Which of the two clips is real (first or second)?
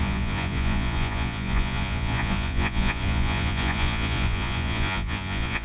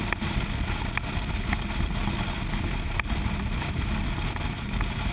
second